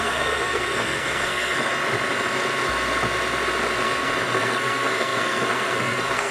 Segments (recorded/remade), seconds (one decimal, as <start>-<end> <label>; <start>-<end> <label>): 0.0-1.7 remade; 1.7-3.8 recorded; 3.8-6.3 remade